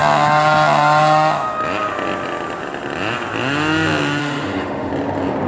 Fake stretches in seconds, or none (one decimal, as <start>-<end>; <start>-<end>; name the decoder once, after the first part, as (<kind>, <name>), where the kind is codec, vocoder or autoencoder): 4.2-4.9 (autoencoder, DAC-VAE)